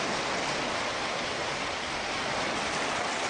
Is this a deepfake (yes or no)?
no